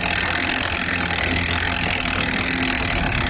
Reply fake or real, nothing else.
real